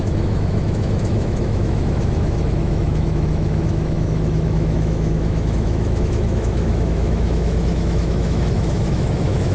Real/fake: fake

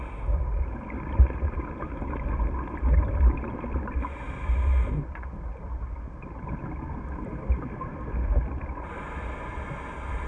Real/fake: real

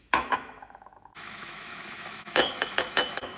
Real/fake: fake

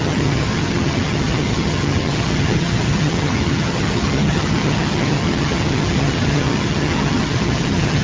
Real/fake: fake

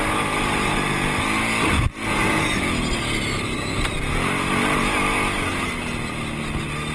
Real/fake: real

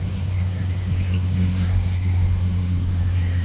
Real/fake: fake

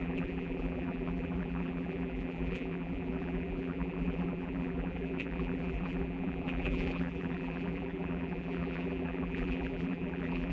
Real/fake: fake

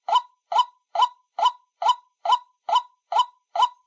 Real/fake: real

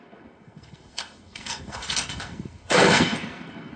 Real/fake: fake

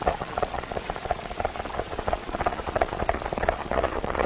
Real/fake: fake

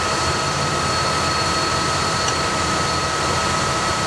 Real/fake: fake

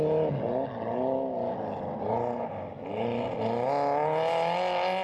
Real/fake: real